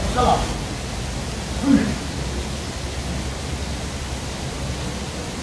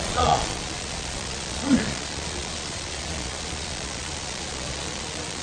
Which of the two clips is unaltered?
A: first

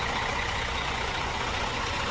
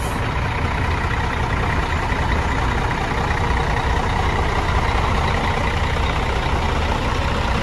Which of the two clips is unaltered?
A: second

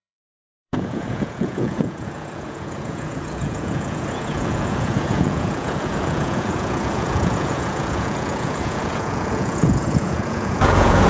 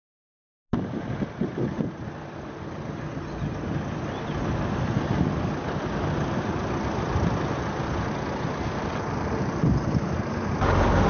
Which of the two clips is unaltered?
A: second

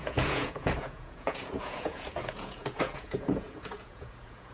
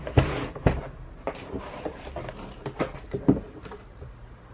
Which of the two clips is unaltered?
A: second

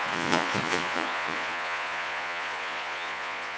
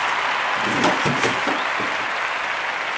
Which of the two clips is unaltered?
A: second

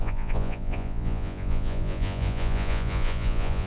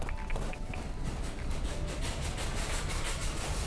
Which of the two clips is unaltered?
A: second